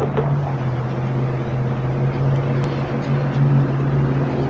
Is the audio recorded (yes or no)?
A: yes